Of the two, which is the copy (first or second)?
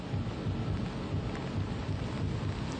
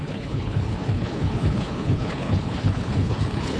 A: second